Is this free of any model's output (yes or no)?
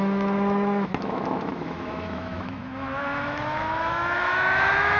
no